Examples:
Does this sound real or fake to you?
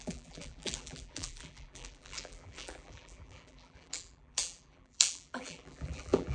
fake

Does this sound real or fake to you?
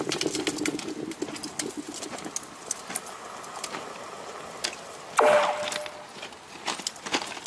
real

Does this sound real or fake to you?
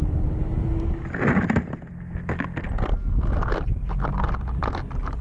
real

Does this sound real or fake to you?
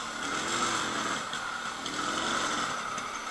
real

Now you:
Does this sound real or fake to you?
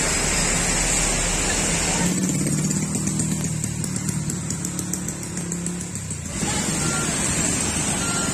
real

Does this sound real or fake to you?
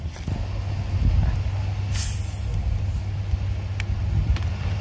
real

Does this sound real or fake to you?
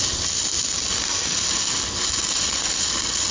real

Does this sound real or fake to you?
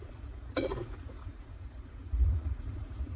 fake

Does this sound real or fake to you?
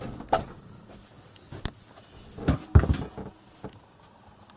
real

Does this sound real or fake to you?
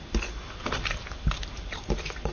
real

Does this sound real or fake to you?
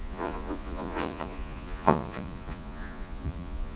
fake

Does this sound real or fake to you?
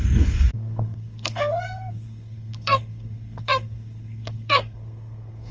fake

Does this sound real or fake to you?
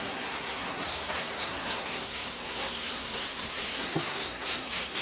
fake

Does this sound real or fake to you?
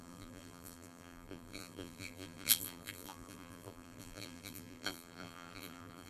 fake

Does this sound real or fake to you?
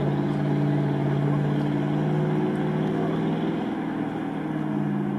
real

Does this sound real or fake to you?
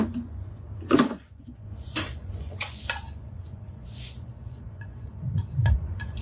fake